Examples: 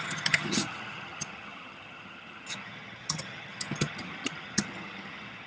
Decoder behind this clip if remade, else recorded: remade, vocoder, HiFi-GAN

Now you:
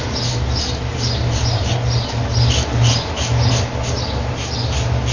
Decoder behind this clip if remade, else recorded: recorded